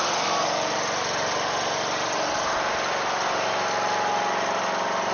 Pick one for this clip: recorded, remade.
recorded